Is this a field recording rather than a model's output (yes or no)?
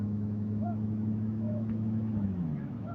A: no